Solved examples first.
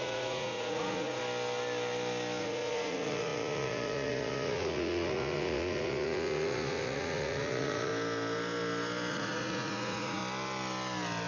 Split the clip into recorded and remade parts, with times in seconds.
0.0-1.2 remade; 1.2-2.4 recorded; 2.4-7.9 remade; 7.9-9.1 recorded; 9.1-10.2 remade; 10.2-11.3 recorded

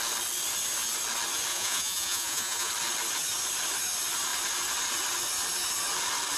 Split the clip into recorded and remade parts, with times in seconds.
0.0-1.5 recorded; 1.5-2.7 remade; 2.7-6.4 recorded

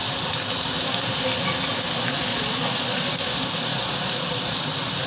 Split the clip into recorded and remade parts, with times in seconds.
0.0-2.3 recorded; 2.3-3.0 remade; 3.0-3.7 recorded; 3.7-4.6 remade; 4.6-5.1 recorded

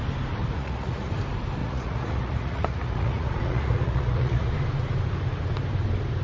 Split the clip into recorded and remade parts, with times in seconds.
0.0-0.4 recorded; 0.4-1.1 remade; 1.1-1.6 recorded; 1.6-4.5 remade; 4.5-6.2 recorded